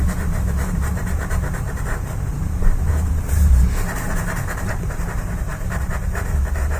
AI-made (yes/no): yes